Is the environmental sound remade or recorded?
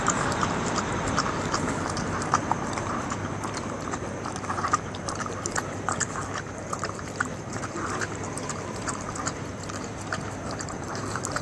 remade